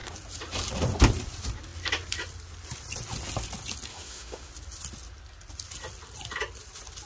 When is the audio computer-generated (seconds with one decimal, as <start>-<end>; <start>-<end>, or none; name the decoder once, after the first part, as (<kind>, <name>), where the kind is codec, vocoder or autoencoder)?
3.9-4.5 (autoencoder, DAC-VAE)